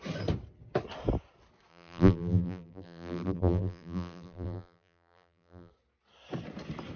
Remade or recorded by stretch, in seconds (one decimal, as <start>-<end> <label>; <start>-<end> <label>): 0.0-1.7 recorded; 1.7-5.7 remade; 5.7-7.0 recorded